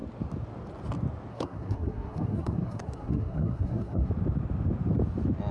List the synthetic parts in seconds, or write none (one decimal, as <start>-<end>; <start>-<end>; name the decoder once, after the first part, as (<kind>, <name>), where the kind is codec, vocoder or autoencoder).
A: 1.3-4.1 (codec, SNAC)